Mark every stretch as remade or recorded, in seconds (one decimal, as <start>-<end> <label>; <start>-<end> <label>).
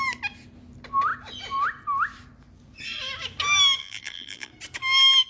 0.0-3.8 recorded; 3.8-4.5 remade; 4.5-5.3 recorded